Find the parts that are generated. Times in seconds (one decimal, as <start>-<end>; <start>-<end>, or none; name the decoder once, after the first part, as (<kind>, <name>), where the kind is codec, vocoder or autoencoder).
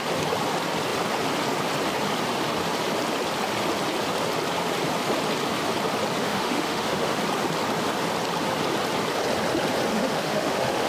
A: 6.2-7.2 (autoencoder, DAC-VAE); 9.9-10.9